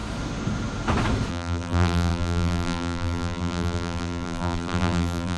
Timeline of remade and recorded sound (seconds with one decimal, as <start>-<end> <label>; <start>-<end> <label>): 0.0-1.3 recorded; 1.3-5.4 remade